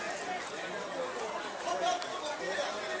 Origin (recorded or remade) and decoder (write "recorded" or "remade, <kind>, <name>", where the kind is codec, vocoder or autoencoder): recorded